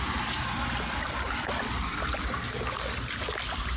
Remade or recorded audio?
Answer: recorded